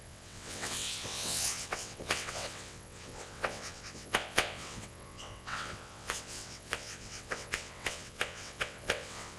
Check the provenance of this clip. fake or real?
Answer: fake